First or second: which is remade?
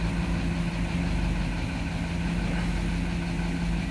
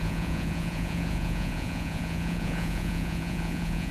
second